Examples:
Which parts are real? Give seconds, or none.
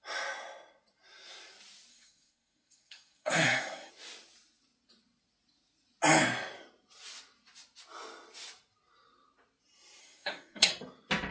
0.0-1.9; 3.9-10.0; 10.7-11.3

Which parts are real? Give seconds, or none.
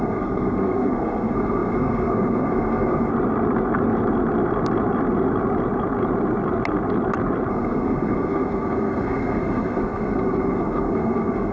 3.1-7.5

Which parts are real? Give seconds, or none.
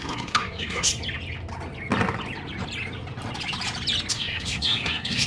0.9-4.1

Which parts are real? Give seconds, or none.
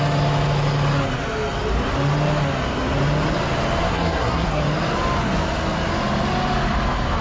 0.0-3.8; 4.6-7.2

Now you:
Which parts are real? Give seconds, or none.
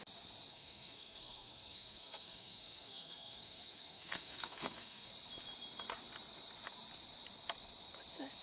0.0-0.5; 5.1-8.4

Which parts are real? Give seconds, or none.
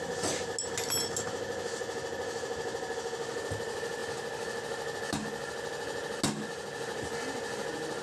0.0-8.0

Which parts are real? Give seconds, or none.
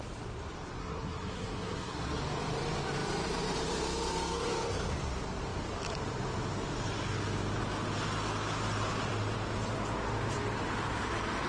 0.0-0.8; 2.2-11.5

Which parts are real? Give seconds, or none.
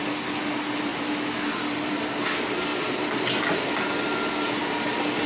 0.0-5.3